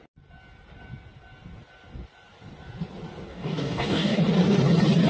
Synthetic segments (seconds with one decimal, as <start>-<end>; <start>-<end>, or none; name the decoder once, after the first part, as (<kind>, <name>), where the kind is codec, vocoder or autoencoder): 3.3-4.2 (codec, DAC)